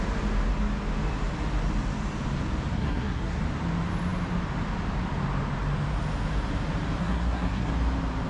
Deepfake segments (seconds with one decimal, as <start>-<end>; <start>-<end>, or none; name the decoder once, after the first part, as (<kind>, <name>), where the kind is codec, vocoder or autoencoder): 2.7-3.4 (codec, SNAC); 7.0-7.7